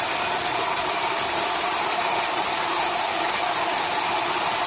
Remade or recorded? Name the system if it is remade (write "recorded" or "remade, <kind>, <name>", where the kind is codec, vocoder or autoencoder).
recorded